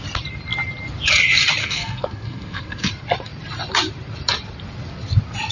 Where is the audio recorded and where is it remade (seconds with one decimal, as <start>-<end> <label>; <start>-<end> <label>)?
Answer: 0.0-1.6 recorded; 1.6-2.9 remade; 2.9-5.5 recorded